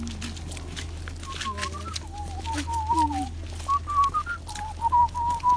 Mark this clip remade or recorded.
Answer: recorded